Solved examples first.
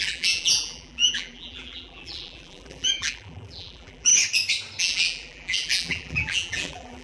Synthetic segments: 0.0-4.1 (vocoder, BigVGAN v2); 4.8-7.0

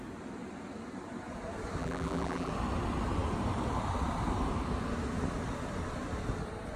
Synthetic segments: 1.8-2.5 (vocoder, BigVGAN v2)

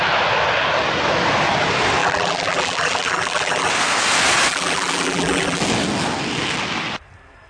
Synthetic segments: 2.0-3.7 (vocoder, BigVGAN v2); 4.5-5.6

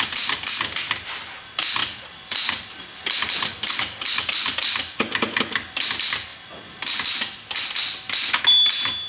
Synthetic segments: 1.8-4.2 (vocoder, BigVGAN v2)